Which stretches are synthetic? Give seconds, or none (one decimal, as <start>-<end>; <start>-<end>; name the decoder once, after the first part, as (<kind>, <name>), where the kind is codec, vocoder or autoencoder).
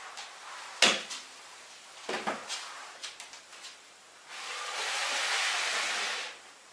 none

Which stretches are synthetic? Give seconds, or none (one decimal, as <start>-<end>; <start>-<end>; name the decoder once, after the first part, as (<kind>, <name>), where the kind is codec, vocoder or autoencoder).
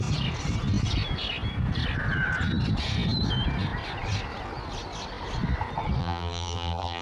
6.0-7.0 (vocoder, BigVGAN v2)